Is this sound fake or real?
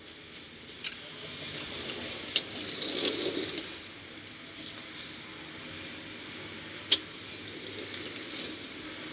real